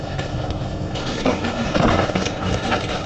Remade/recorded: remade